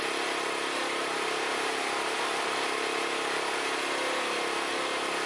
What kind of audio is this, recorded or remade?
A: recorded